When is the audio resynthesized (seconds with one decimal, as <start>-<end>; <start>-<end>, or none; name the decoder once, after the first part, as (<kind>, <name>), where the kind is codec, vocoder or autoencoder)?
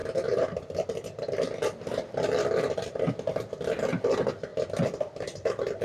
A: none